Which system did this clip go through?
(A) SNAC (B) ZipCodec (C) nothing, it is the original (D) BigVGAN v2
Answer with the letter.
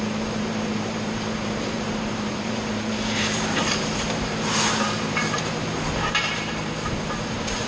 D